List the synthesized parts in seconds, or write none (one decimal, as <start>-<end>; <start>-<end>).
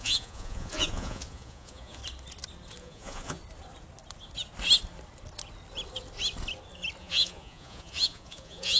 0.0-2.0; 2.8-3.4; 7.0-8.8